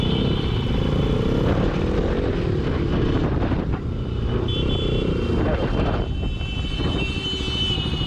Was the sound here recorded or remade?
recorded